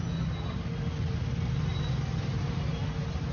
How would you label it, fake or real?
real